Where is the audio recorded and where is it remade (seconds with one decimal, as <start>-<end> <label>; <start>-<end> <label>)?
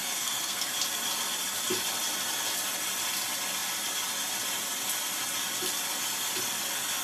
0.0-0.7 remade; 0.7-7.0 recorded